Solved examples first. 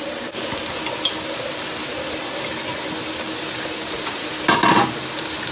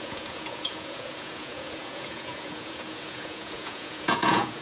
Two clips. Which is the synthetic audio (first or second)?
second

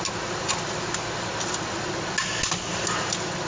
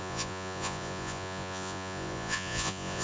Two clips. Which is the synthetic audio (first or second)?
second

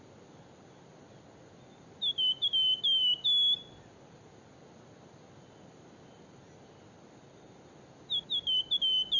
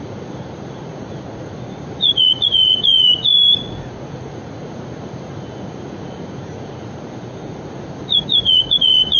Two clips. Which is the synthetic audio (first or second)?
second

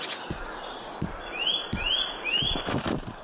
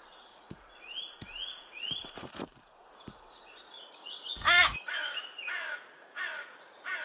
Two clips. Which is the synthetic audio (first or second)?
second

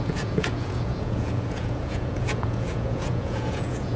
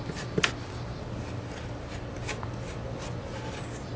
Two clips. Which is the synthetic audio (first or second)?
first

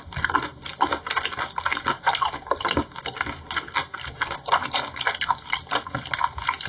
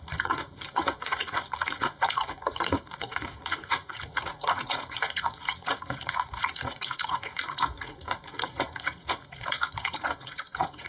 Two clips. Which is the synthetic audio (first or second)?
second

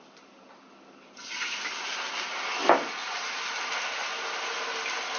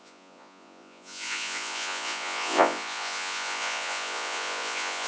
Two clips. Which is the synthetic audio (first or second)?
second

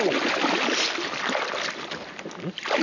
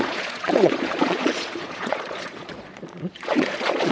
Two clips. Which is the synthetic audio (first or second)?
second